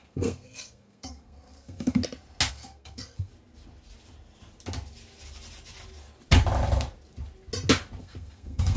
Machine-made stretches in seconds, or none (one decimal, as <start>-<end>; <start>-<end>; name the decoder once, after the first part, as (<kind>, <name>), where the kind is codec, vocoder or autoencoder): 0.0-2.0 (codec, SNAC); 2.5-3.3; 8.0-8.8